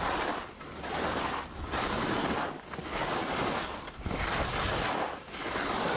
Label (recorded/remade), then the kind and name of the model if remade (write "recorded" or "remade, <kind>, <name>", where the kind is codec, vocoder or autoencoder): recorded